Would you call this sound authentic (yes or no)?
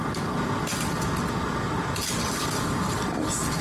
yes